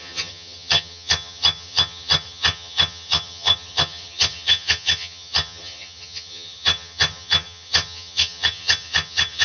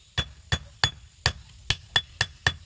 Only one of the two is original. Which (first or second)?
second